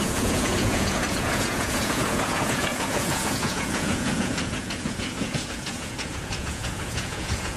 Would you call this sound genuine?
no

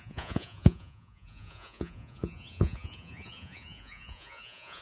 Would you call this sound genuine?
no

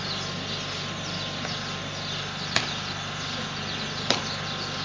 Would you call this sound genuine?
yes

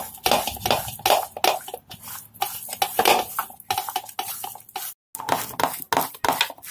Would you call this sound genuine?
yes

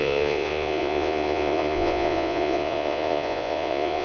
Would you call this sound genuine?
no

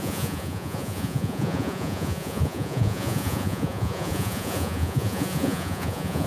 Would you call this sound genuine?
no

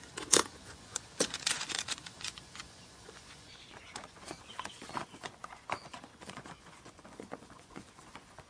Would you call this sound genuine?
no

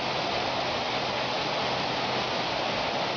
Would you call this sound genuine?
yes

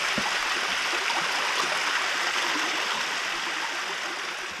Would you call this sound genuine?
yes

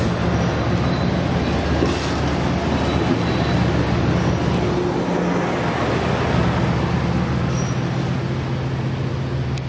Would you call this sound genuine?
yes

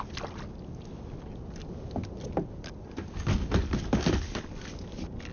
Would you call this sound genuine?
yes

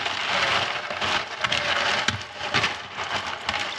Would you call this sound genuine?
yes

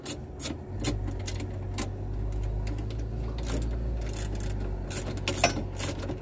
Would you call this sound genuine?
yes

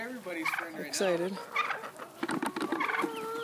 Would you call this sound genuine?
yes